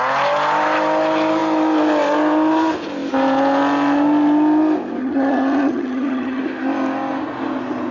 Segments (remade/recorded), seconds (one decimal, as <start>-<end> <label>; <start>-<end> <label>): 0.0-5.0 recorded; 5.0-6.4 remade; 6.4-7.9 recorded